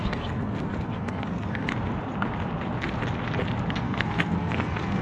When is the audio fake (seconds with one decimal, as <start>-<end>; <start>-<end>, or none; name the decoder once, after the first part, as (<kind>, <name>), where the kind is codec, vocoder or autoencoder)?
0.0-1.7 (codec, SNAC); 3.8-5.0